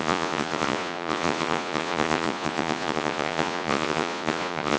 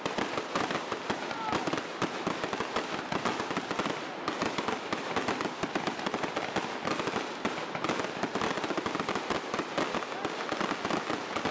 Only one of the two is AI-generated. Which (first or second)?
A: first